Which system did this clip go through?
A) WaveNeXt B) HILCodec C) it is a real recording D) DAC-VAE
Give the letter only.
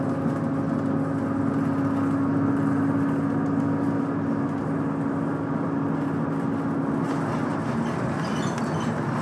C